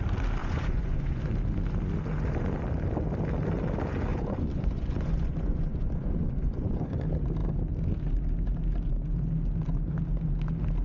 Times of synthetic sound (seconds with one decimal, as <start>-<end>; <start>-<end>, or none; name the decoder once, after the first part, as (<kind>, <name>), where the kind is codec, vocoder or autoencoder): 0.4-1.2 (vocoder, Vocos); 4.1-7.0